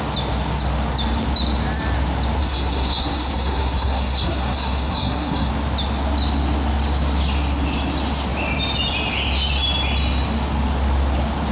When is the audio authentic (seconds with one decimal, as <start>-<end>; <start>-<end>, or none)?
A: 0.0-2.4; 5.5-11.5